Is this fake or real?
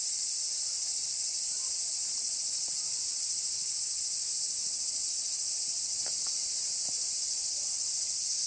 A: real